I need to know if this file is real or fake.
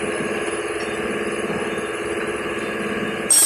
real